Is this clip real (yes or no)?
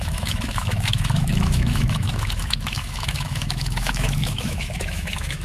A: no